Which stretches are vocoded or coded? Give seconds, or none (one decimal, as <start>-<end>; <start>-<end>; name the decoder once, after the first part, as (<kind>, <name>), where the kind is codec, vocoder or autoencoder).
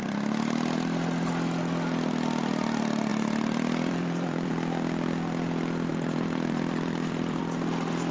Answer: 3.1-4.5 (vocoder, BigVGAN v2); 5.9-7.4